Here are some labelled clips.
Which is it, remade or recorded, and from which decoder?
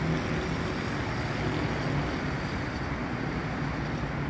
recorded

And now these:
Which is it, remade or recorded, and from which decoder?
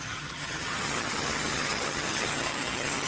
remade, vocoder, HiFi-GAN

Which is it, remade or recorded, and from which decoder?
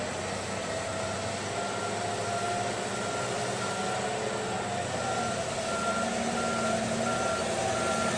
recorded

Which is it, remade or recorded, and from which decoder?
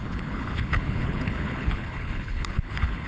remade, codec, HILCodec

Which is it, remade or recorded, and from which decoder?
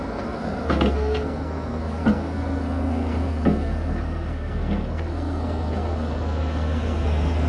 remade, codec, SNAC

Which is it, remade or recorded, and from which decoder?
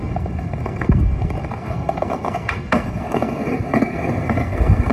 remade, codec, SNAC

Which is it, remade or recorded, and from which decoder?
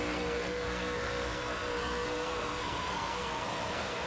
remade, codec, SNAC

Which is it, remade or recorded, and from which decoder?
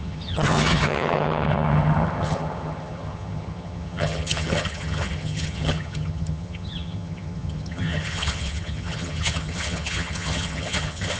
remade, vocoder, HiFi-GAN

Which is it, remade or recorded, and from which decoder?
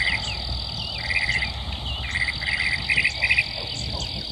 recorded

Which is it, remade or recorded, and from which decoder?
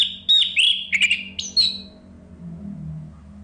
recorded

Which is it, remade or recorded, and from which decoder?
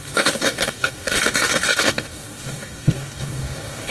remade, codec, DAC